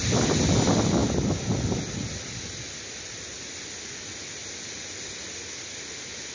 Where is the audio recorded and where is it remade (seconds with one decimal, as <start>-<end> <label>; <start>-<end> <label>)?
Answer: 0.0-6.3 recorded